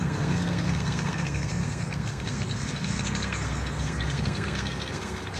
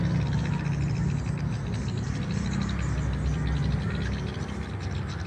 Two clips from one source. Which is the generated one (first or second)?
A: first